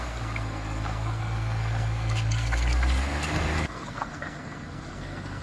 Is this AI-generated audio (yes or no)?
yes